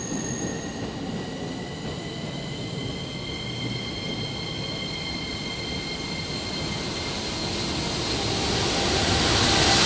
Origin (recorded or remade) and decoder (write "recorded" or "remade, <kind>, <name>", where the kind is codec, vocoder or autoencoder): recorded